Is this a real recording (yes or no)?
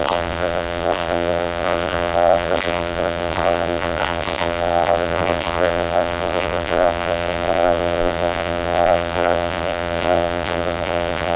no